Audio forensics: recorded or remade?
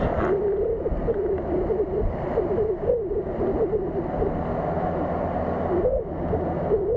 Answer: recorded